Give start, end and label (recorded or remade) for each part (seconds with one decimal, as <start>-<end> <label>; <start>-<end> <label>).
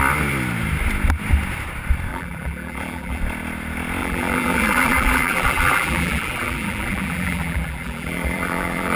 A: 0.0-2.1 recorded; 2.1-3.2 remade; 3.2-4.0 recorded; 4.0-9.0 remade